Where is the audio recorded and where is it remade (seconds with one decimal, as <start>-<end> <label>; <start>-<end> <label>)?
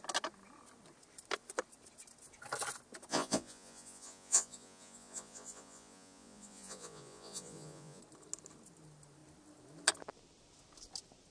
0.0-3.1 recorded; 3.1-8.0 remade; 8.0-11.3 recorded